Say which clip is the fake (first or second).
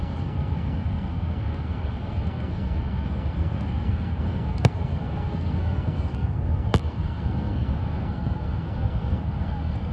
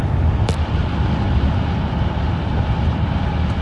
first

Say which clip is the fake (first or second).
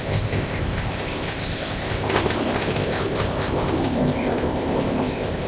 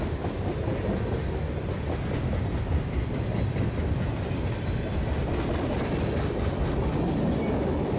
first